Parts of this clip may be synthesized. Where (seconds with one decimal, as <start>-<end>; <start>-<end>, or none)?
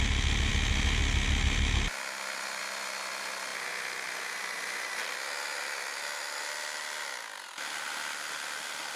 none